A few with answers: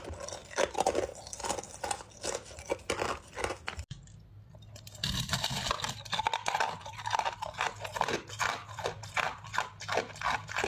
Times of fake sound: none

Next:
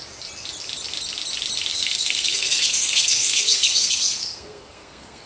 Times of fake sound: 1.7-5.3 (codec, SNAC)